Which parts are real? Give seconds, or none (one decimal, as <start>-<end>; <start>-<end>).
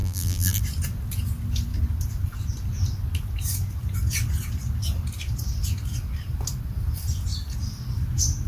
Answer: 0.6-8.5